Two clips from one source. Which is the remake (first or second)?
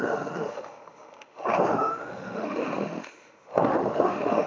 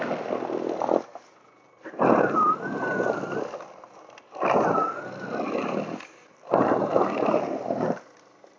first